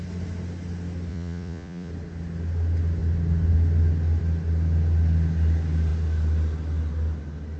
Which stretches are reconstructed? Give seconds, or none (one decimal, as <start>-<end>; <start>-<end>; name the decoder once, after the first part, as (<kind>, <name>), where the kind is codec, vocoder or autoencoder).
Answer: 1.1-1.9 (vocoder, Vocos)